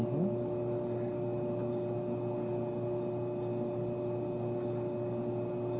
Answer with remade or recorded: recorded